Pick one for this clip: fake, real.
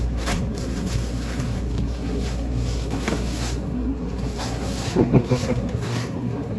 fake